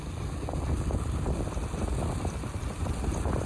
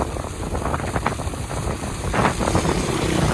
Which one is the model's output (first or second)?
second